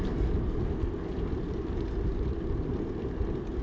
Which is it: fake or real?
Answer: real